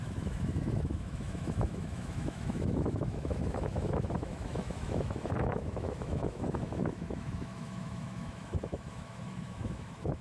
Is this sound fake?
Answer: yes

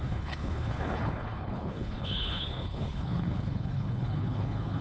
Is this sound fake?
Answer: yes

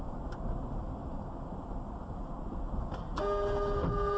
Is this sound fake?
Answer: no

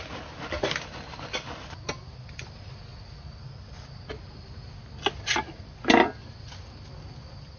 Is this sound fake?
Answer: no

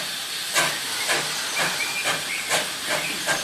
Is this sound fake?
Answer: no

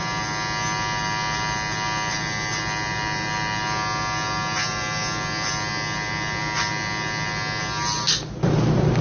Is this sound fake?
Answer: no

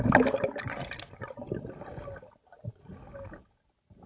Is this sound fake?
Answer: no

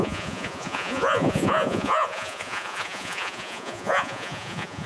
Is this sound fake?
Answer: yes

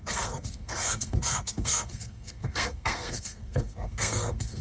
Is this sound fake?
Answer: yes